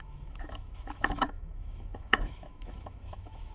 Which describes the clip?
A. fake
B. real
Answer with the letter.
A